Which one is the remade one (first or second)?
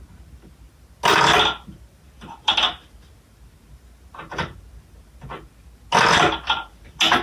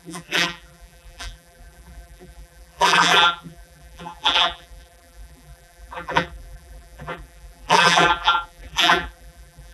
second